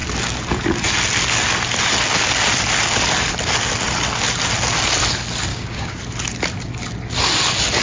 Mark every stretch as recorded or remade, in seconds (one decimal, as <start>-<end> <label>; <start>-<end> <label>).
0.0-5.5 recorded; 5.5-6.0 remade; 6.0-7.8 recorded